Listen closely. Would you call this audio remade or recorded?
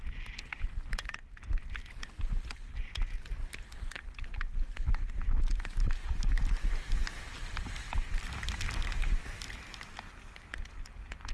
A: recorded